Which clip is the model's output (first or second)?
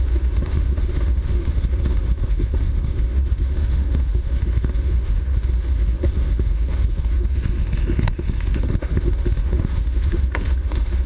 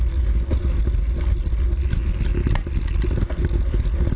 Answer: first